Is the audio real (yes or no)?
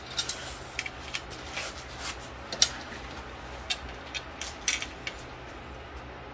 yes